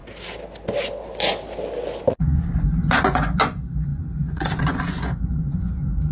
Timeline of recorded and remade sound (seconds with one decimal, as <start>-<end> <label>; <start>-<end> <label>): 0.0-2.0 recorded; 2.0-6.1 remade